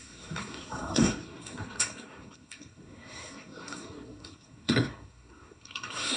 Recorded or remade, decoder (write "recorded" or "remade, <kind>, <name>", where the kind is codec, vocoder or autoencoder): remade, codec, SNAC